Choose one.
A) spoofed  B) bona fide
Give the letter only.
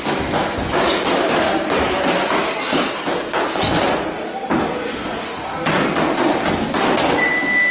B